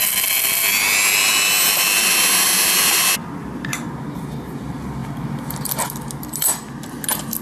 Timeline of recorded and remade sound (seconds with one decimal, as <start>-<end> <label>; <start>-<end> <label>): 0.0-5.0 recorded; 5.0-5.7 remade; 5.7-7.4 recorded